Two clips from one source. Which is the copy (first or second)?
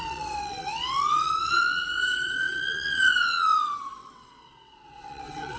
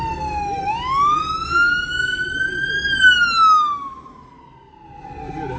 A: first